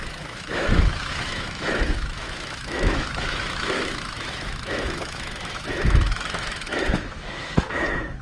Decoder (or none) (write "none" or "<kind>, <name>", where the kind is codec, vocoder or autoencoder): autoencoder, DAC-VAE